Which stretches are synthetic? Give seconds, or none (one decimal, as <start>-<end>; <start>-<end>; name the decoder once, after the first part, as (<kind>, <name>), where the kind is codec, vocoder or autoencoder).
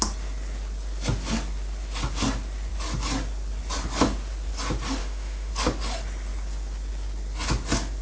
5.0-5.5 (autoencoder, DAC-VAE)